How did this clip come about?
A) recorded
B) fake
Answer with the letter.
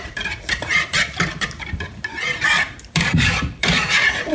B